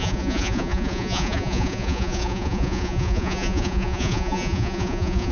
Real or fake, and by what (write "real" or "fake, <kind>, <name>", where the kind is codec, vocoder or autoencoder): fake, vocoder, Vocos